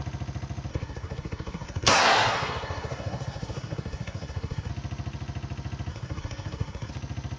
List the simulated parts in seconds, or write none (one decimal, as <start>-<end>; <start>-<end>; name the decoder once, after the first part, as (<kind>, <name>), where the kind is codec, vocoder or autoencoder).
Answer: 0.7-4.7 (codec, SNAC); 5.9-6.9